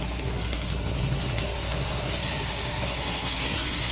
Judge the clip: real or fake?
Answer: fake